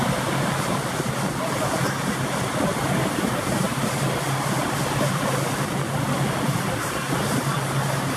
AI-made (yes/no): no